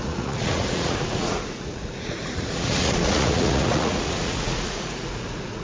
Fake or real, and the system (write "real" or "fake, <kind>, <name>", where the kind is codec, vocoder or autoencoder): fake, vocoder, Vocos